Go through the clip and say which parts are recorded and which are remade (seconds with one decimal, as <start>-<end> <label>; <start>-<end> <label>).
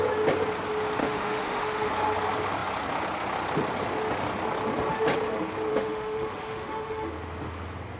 0.0-1.0 recorded; 1.0-1.9 remade; 1.9-5.7 recorded; 5.7-7.1 remade; 7.1-8.0 recorded